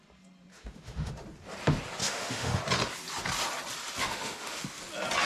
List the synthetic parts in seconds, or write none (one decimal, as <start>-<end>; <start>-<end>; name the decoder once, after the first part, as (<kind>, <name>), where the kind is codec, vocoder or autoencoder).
0.5-1.1 (autoencoder, DAC-VAE); 2.0-2.6; 4.0-4.6